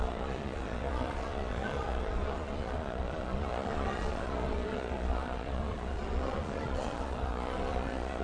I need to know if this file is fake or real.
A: fake